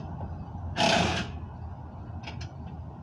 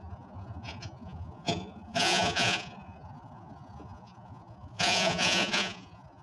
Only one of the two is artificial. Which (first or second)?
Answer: second